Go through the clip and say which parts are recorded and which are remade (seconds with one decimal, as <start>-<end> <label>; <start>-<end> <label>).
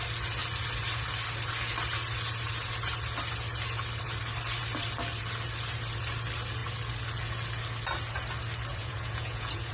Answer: 0.0-8.7 recorded; 8.7-9.7 remade